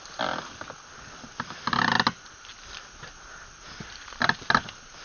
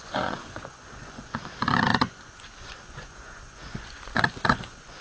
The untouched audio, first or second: first